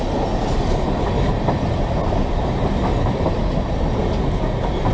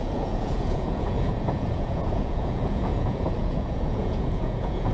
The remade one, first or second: second